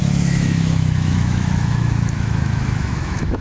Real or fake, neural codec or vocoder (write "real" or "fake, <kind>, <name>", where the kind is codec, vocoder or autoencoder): fake, autoencoder, DAC-VAE